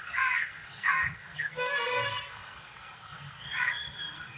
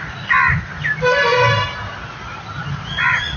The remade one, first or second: first